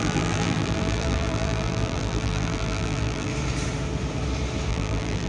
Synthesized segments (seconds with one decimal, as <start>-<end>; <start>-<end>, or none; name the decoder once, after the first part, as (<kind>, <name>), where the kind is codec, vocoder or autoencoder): 0.0-3.3 (vocoder, BigVGAN v2); 4.7-5.3